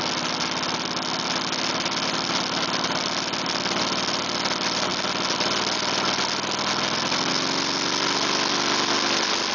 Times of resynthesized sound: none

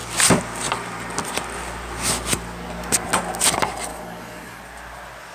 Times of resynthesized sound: 3.9-4.6

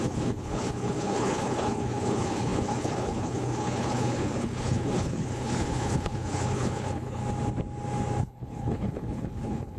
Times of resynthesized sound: 0.0-7.2; 8.2-9.8

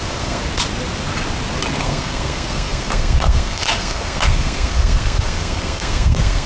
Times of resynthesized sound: 0.0-0.4; 1.8-6.5

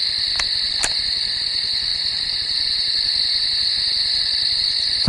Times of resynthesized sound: none

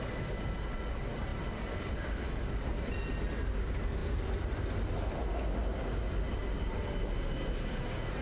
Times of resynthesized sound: none

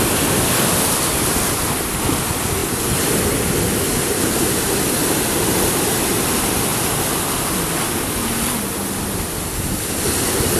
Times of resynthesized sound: none

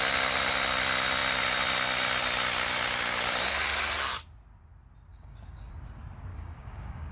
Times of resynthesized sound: 5.1-5.7; 6.3-7.1